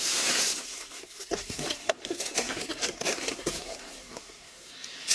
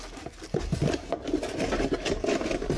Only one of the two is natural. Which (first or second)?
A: second